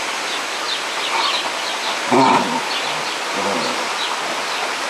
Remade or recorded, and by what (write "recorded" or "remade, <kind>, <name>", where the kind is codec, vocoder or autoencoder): recorded